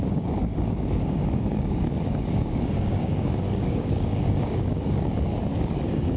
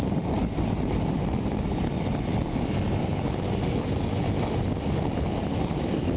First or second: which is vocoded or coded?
first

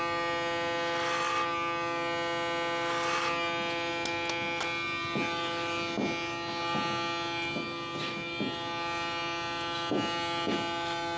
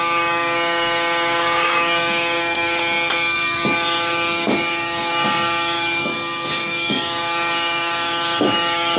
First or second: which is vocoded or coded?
second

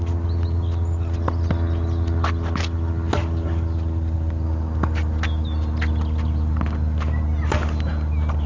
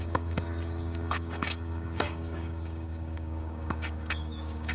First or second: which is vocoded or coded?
second